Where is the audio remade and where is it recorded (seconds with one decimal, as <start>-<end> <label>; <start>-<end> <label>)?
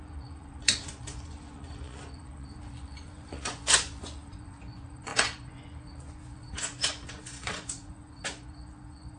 0.0-9.2 remade